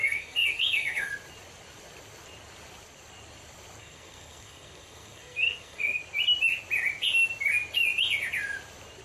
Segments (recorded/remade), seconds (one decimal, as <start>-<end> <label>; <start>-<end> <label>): 0.0-1.1 remade; 1.1-3.8 recorded; 3.8-6.0 remade; 6.0-9.0 recorded